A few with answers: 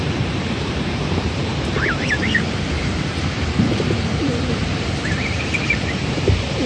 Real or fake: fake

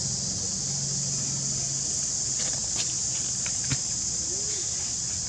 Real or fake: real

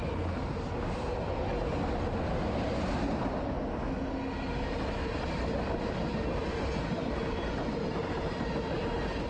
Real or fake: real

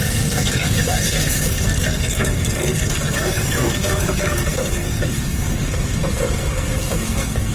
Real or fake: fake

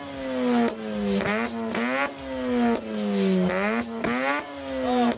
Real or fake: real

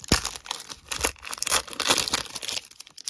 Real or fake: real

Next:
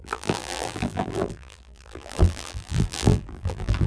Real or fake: fake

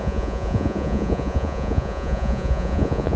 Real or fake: fake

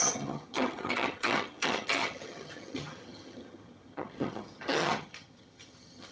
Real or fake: fake